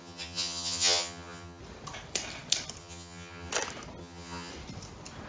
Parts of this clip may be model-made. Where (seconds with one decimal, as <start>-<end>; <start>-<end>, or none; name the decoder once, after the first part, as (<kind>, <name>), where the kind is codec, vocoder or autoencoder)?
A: 0.0-1.6 (vocoder, HiFi-GAN); 2.8-3.5; 4.0-4.5